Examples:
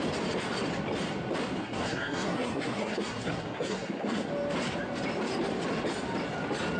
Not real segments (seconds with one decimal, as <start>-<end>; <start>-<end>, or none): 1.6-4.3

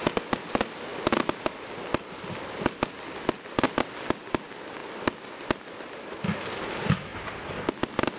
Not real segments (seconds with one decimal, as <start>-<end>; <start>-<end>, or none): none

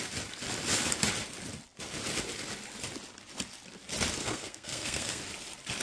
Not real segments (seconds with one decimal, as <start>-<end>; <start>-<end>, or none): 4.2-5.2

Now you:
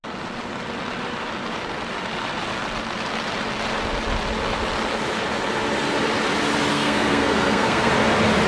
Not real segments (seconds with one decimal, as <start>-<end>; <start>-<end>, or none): 6.7-7.9

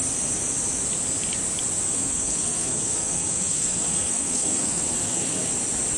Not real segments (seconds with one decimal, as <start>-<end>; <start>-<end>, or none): 1.9-5.5

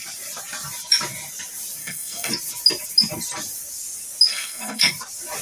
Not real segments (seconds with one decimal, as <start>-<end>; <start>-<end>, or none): 1.8-2.3; 4.3-4.9

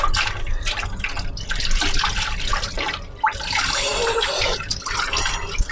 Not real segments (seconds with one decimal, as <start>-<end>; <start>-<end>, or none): none